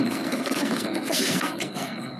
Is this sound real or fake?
fake